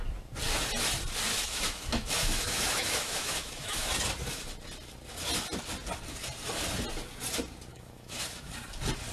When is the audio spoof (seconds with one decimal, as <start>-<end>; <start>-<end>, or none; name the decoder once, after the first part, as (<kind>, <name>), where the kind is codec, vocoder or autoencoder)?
1.3-3.9 (autoencoder, DAC-VAE); 7.7-8.5